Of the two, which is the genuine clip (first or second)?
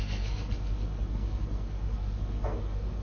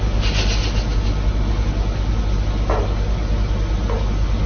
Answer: second